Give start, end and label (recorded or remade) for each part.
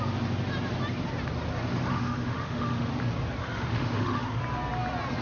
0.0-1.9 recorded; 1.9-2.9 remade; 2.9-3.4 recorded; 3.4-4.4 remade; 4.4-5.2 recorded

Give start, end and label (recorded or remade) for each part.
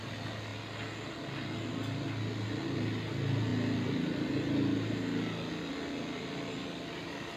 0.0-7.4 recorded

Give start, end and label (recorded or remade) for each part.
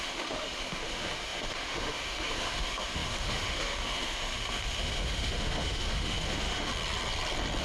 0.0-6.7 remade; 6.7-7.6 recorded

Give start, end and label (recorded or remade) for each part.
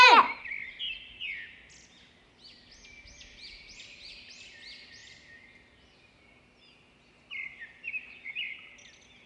0.0-9.3 recorded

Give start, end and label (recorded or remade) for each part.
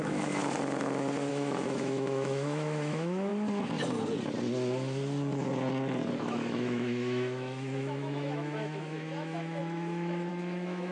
0.0-0.4 remade; 0.4-1.3 recorded; 1.3-3.3 remade; 3.3-6.2 recorded; 6.2-10.9 remade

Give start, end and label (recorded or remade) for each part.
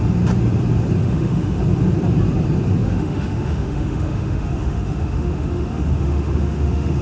0.0-1.0 recorded; 1.0-1.6 remade; 1.6-2.8 recorded; 2.8-7.0 remade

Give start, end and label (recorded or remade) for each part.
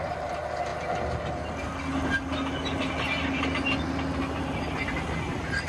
0.0-5.7 recorded